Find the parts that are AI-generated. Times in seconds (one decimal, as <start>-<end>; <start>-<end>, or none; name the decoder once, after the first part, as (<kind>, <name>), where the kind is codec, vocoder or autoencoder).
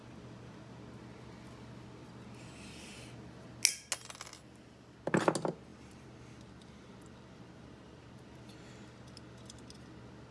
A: 5.7-8.7 (vocoder, BigVGAN v2)